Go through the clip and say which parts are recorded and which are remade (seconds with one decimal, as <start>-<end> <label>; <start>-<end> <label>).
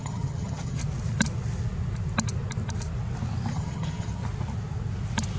0.0-0.8 remade; 0.8-3.5 recorded; 3.5-4.2 remade; 4.2-5.4 recorded